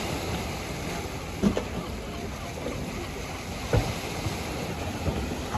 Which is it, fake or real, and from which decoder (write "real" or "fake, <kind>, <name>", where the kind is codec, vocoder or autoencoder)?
real